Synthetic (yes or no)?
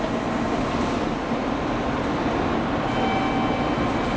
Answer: no